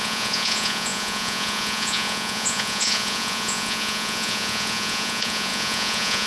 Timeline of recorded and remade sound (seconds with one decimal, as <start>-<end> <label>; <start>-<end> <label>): 0.0-6.3 remade